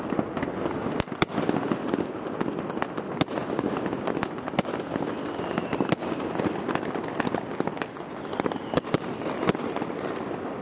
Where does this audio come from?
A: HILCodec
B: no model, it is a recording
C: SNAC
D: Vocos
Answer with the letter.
B